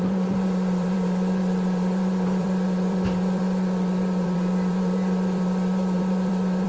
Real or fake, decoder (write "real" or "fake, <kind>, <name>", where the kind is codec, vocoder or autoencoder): fake, vocoder, BigVGAN v2